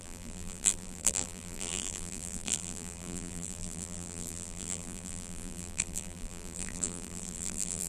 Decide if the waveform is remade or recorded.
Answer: remade